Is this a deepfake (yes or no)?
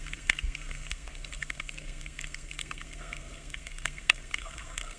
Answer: yes